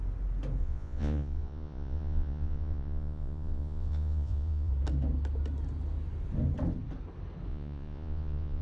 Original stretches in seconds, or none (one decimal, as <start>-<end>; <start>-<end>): 0.0-0.6; 4.7-7.5